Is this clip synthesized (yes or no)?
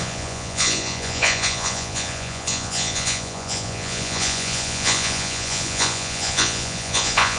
yes